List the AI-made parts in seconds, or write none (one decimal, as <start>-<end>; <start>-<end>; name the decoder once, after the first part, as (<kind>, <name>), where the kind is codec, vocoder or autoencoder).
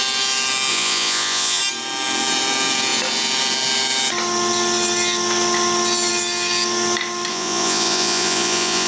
0.7-1.6 (vocoder, Vocos); 7.3-8.9